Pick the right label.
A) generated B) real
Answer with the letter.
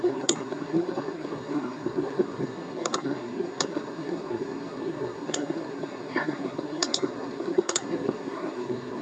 A